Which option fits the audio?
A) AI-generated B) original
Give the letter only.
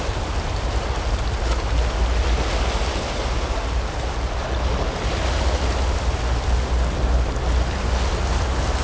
B